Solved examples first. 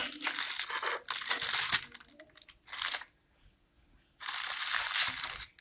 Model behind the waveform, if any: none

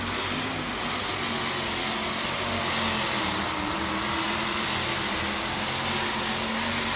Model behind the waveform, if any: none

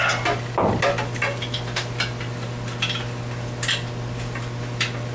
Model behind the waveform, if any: none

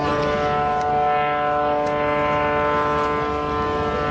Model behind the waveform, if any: none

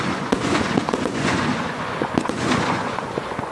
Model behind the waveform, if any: vocoder, Vocos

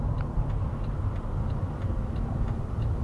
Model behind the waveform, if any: vocoder, BigVGAN v2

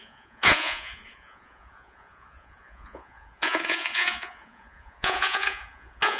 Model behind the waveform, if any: vocoder, Vocos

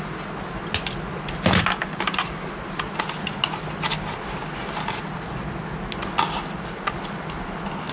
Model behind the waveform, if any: none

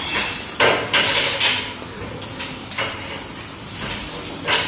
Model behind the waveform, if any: none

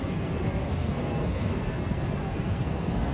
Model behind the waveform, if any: codec, SNAC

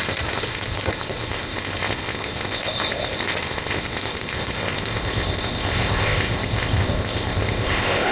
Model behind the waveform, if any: codec, ZipCodec